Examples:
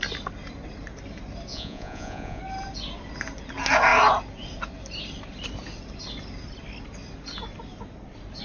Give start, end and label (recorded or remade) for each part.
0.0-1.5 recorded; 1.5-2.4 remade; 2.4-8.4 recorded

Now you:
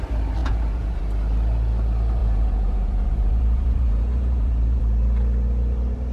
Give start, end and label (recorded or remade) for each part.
0.0-0.4 recorded; 0.4-1.0 remade; 1.0-2.2 recorded; 2.2-4.8 remade; 4.8-6.1 recorded

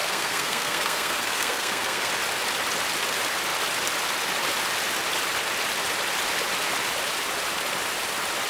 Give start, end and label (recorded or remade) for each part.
0.0-2.1 remade; 2.1-8.5 recorded

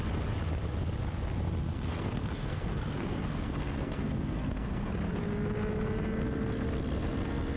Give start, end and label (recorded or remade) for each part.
0.0-1.7 recorded; 1.7-4.9 remade; 4.9-7.6 recorded

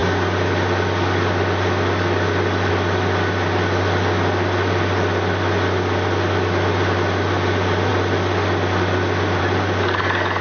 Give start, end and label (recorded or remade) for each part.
0.0-10.4 recorded